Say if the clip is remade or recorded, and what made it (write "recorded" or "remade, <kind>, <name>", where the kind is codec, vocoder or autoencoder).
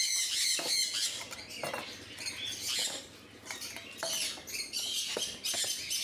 recorded